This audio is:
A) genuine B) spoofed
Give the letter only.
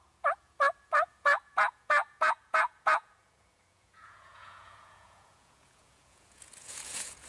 B